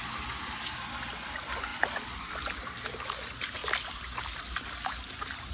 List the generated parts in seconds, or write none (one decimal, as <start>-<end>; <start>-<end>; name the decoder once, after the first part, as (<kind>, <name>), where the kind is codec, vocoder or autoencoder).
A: none